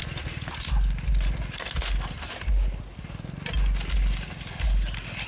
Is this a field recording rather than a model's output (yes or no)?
yes